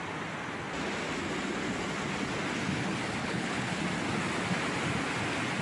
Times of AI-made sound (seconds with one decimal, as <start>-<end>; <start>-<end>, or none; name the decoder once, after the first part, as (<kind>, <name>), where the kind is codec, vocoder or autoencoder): 3.2-3.8 (codec, HILCodec)